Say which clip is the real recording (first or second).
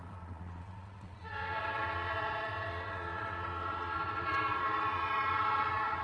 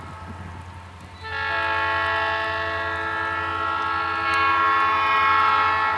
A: second